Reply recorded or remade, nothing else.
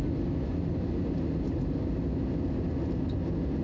recorded